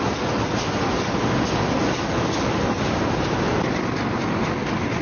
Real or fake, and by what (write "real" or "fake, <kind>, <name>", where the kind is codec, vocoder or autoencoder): real